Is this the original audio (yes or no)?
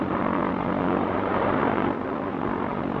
no